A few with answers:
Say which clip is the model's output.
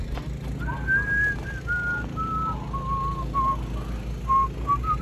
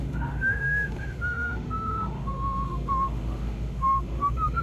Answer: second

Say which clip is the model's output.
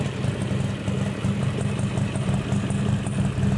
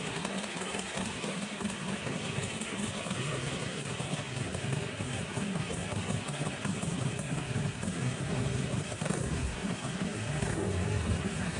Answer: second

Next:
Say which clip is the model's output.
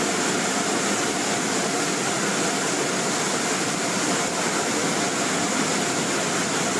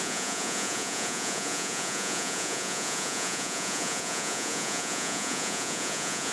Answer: second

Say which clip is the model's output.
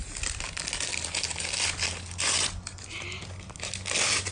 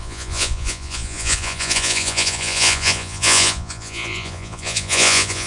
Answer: second